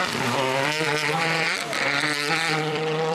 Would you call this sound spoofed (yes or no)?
yes